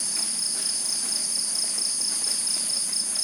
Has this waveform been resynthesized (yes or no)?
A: no